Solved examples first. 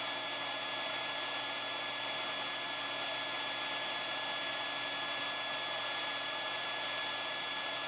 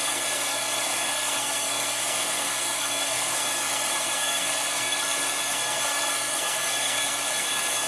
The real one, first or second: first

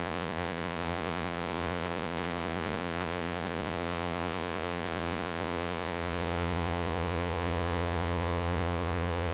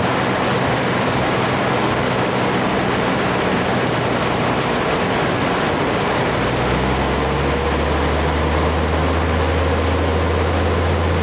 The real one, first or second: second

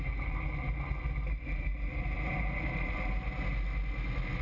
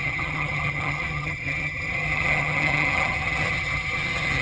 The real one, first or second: first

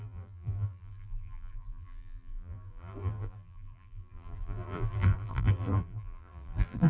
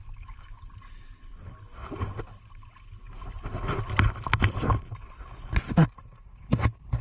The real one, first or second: second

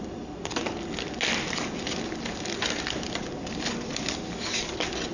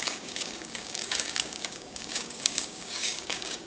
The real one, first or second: first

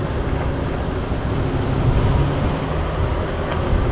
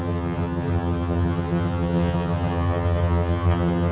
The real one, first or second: first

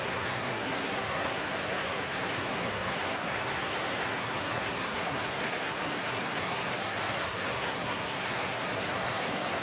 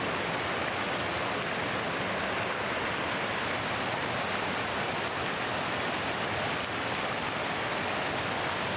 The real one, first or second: second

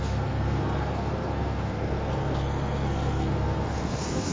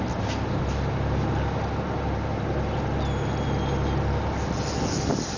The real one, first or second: second